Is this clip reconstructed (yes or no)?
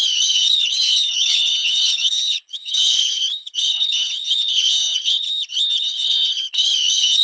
yes